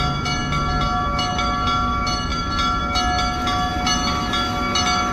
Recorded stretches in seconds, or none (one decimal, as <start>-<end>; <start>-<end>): 0.0-5.1

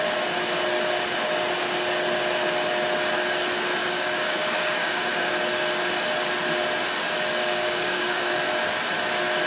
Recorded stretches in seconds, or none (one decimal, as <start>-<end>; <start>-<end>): 0.0-3.8; 5.3-7.4; 8.3-9.5

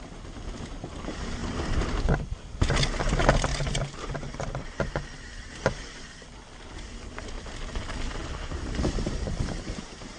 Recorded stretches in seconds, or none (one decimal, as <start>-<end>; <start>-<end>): 0.0-1.4; 2.0-3.5; 5.9-8.2